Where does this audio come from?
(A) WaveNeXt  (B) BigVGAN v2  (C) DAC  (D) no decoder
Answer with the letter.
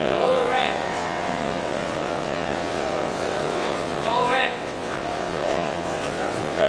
A